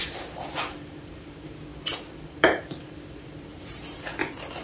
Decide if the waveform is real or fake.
fake